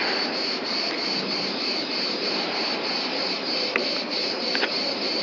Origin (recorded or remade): remade